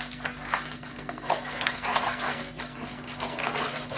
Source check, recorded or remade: remade